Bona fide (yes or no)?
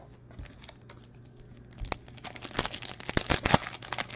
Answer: yes